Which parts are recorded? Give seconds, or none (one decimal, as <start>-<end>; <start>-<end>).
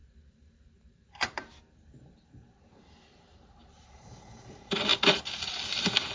4.9-6.1